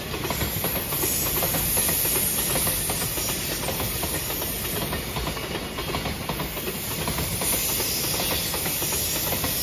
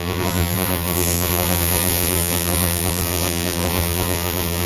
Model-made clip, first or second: second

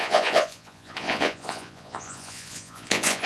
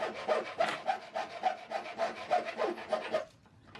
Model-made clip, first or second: first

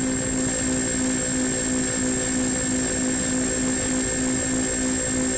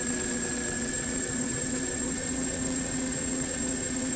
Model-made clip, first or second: second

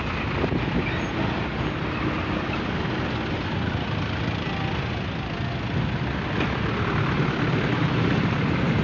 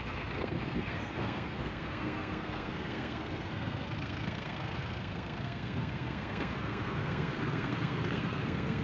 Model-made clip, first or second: second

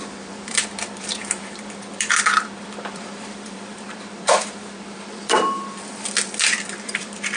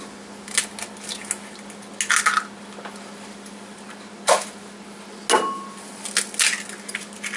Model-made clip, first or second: first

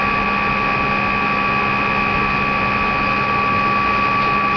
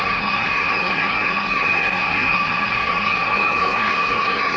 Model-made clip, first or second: second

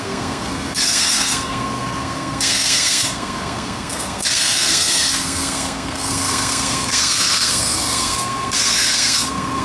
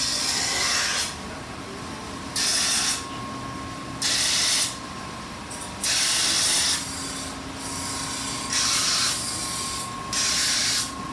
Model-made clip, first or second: first